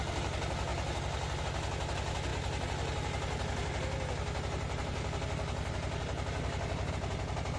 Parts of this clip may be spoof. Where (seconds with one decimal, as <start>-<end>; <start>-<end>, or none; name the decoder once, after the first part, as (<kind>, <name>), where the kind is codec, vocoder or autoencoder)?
none